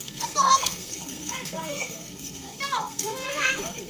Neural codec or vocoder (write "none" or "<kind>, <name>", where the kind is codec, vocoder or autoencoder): codec, SNAC